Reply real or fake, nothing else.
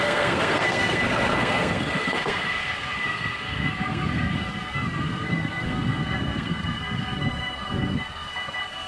fake